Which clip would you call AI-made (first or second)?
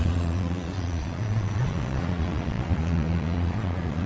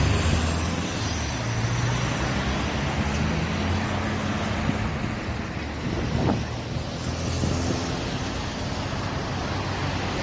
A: first